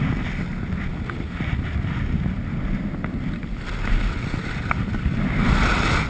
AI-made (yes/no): no